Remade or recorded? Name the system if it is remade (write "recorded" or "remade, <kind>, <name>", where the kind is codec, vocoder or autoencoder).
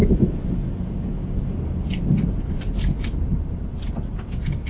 recorded